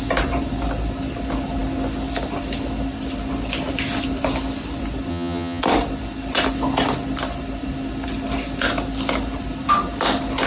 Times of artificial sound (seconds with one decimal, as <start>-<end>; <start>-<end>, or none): 5.1-5.6